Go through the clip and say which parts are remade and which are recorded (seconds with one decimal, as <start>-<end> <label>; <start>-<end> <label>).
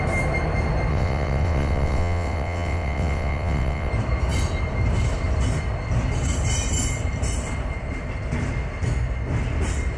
0.0-0.9 recorded; 0.9-3.9 remade; 3.9-10.0 recorded